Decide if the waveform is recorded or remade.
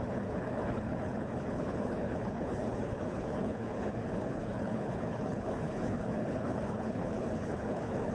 remade